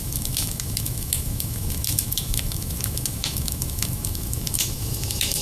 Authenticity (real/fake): fake